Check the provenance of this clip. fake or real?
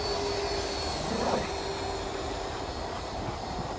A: real